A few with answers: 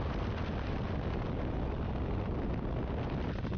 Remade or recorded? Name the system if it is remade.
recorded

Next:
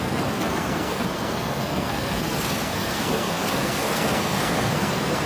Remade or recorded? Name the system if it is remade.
remade, codec, SNAC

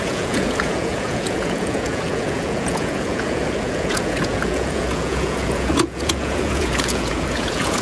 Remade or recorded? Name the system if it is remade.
remade, vocoder, Vocos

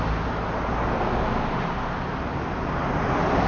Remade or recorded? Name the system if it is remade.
recorded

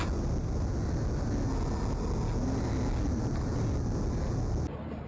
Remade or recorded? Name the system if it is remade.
recorded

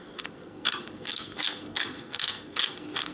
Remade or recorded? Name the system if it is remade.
remade, codec, SNAC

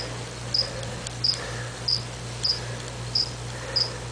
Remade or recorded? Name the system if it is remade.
recorded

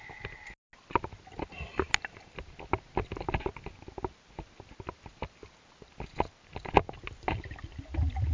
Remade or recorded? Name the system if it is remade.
recorded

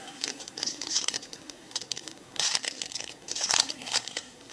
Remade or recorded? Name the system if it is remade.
remade, codec, SNAC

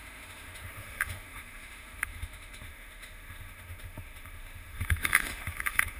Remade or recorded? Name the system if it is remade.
remade, autoencoder, DAC-VAE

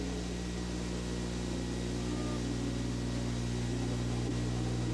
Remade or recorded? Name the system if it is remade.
recorded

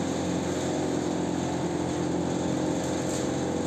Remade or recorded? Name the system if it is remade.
recorded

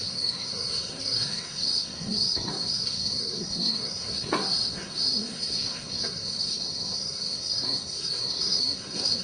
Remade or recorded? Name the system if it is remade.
remade, codec, SNAC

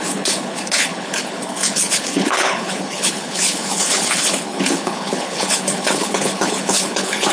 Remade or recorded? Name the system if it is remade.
remade, codec, HILCodec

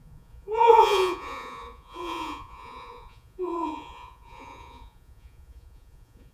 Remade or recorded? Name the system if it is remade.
remade, vocoder, Vocos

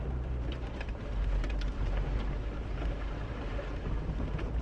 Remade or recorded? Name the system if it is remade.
remade, vocoder, BigVGAN v2